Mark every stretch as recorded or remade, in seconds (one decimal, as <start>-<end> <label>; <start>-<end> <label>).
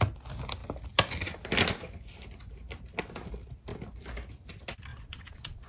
0.0-4.9 recorded; 4.9-5.7 remade